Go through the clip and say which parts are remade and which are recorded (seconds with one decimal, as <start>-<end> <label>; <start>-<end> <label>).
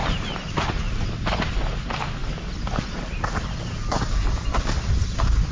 0.0-5.5 recorded